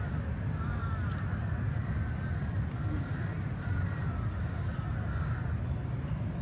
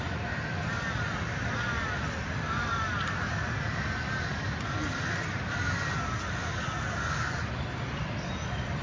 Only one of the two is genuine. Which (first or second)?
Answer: second